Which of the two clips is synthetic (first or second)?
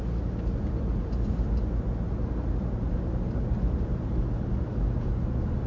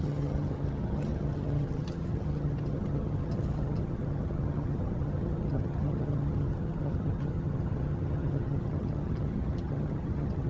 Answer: second